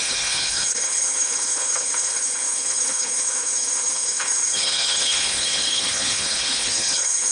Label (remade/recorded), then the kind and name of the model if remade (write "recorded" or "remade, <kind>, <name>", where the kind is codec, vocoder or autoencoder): remade, codec, HILCodec